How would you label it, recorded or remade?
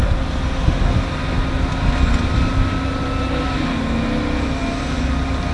recorded